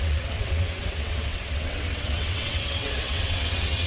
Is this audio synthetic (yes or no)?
yes